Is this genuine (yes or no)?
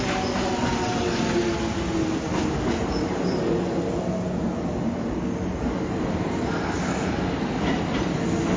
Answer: yes